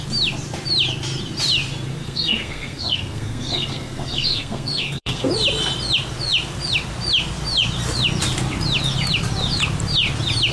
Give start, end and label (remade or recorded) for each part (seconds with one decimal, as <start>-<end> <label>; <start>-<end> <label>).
0.0-1.9 recorded; 1.9-5.3 remade; 5.3-10.5 recorded